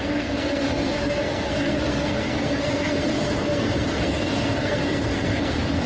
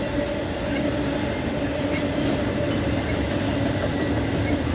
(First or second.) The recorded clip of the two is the second